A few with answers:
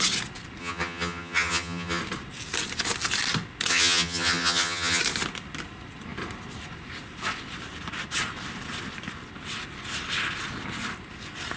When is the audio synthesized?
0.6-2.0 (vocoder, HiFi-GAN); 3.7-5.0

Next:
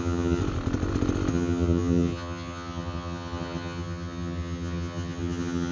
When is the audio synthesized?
0.0-0.4 (vocoder, HiFi-GAN); 1.3-5.7

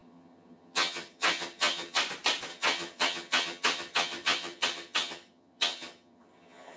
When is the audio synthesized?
0.0-2.0 (vocoder, HiFi-GAN); 2.5-6.8

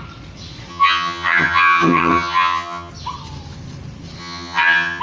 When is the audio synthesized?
0.7-2.9 (vocoder, HiFi-GAN); 4.2-5.0

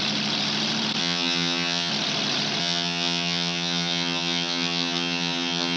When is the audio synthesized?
1.0-1.9 (vocoder, HiFi-GAN); 2.6-5.8

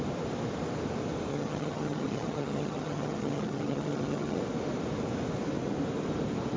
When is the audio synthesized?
1.3-4.4 (vocoder, HiFi-GAN)

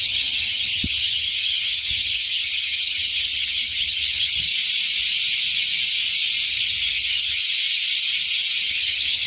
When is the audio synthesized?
0.0-4.5 (vocoder, HiFi-GAN); 6.5-7.4; 8.7-9.3

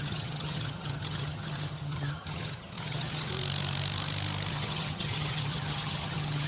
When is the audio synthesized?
0.0-3.3 (vocoder, HiFi-GAN); 4.5-6.5